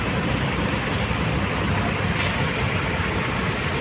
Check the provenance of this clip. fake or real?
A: real